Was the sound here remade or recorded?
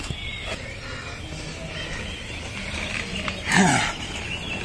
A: recorded